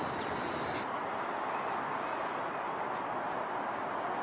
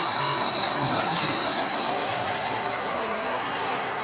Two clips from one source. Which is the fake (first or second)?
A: second